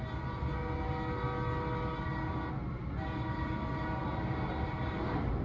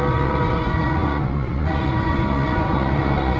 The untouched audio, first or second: first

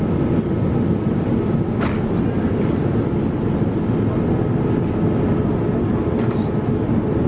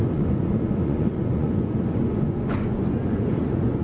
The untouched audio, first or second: first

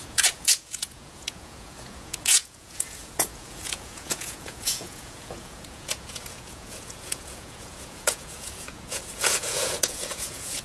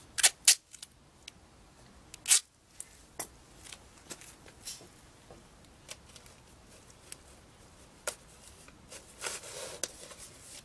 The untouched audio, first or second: second